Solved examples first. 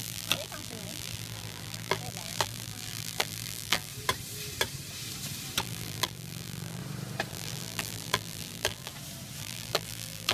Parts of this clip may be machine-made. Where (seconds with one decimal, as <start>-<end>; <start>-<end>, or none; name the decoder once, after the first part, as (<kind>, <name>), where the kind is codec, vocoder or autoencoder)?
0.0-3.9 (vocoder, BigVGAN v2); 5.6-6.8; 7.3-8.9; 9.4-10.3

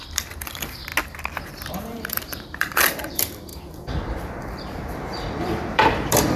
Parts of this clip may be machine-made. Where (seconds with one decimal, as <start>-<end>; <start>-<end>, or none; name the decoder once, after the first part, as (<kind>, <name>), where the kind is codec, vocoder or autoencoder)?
0.0-0.9 (vocoder, BigVGAN v2); 1.7-6.4

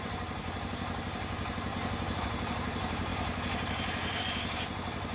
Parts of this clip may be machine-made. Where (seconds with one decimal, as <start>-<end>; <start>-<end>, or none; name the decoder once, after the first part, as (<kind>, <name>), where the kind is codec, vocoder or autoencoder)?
0.0-1.7 (vocoder, BigVGAN v2); 2.2-5.1

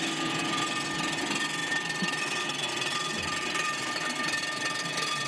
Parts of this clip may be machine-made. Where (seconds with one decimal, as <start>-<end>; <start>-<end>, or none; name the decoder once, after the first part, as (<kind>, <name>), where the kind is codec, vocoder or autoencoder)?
1.6-4.4 (vocoder, BigVGAN v2)